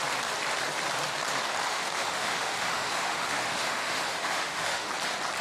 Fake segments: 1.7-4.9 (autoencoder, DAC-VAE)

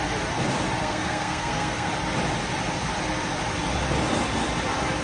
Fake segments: 0.8-1.9 (codec, SNAC)

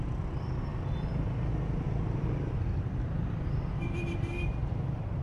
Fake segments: none

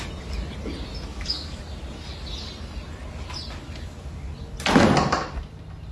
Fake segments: 1.1-1.6 (codec, DAC)

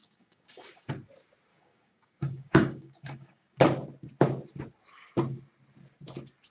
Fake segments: 0.0-0.9 (codec, DAC); 1.5-3.6